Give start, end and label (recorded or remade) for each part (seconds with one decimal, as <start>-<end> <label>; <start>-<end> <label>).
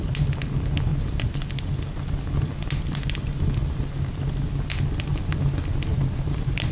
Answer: 0.0-5.9 recorded; 5.9-6.7 remade